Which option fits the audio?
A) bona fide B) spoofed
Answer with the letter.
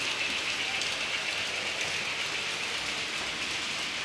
A